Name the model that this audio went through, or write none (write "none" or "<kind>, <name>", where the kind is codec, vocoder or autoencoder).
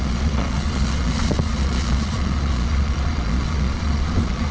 vocoder, Vocos